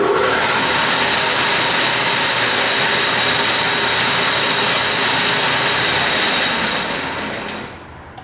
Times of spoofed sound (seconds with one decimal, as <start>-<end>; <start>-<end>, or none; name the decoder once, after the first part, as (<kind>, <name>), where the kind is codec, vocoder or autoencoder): none